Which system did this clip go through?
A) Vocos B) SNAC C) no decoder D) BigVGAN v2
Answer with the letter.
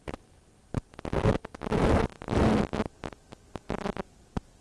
C